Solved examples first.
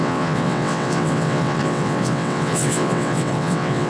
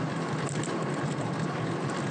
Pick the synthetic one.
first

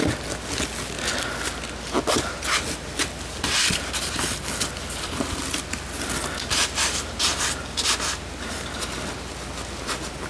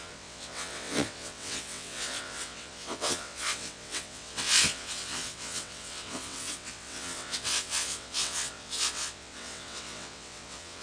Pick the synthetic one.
second